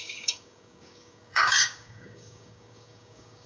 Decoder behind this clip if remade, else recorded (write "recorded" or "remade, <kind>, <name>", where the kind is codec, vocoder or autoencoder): remade, codec, DAC